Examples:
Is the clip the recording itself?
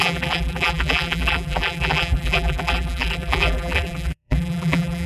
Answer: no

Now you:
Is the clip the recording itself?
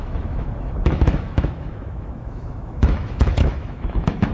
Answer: no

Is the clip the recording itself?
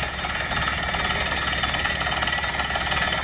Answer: yes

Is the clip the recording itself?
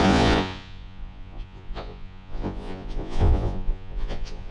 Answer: no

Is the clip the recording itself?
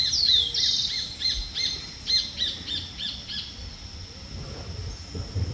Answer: yes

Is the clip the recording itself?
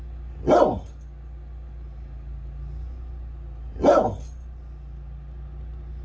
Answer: yes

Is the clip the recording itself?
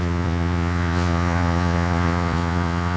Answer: no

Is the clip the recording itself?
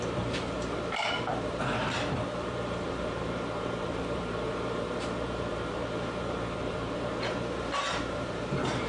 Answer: no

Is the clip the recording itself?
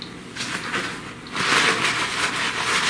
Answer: yes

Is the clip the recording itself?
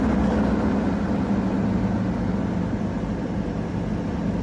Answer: yes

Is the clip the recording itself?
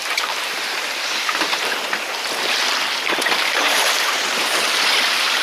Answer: yes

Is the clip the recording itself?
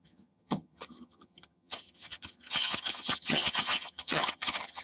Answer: no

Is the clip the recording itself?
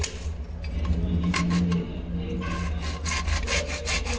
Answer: yes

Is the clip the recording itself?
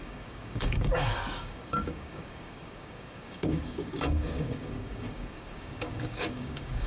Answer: no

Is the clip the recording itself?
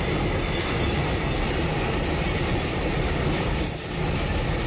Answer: yes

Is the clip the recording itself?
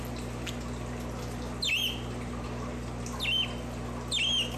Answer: yes